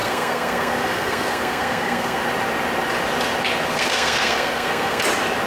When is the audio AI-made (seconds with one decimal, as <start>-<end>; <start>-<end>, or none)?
0.0-2.2; 3.7-5.0